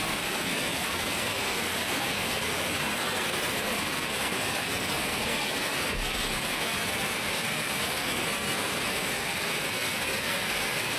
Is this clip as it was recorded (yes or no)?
no